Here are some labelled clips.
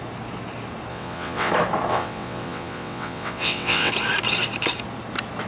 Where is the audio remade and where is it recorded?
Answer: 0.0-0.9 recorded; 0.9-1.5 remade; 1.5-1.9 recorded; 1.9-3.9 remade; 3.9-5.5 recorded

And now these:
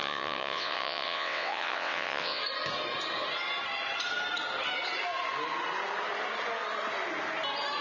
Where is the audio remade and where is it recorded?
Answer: 0.0-2.4 remade; 2.4-7.8 recorded

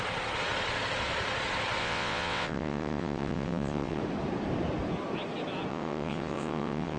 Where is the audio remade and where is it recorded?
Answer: 0.0-1.8 recorded; 1.8-4.0 remade; 4.0-5.7 recorded; 5.7-7.0 remade

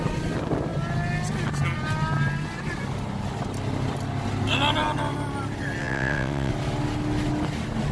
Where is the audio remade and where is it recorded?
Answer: 0.0-5.8 recorded; 5.8-6.5 remade; 6.5-7.9 recorded

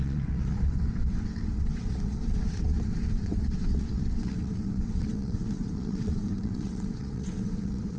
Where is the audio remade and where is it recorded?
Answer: 0.0-8.0 remade

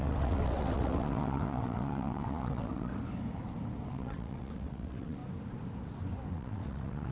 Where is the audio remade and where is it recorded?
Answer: 0.0-2.9 remade; 2.9-3.9 recorded; 3.9-5.2 remade; 5.2-6.3 recorded; 6.3-7.1 remade